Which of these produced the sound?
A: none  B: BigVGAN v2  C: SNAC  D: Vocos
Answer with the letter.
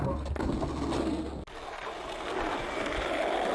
A